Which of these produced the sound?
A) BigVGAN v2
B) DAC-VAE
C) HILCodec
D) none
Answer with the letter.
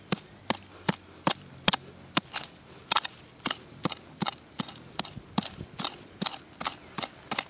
D